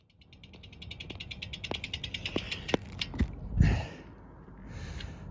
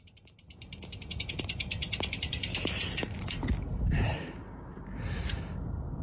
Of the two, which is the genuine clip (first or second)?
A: first